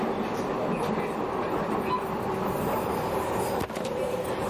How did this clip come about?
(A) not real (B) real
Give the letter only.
B